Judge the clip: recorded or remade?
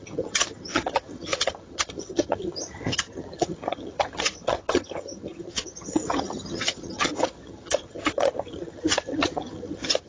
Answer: remade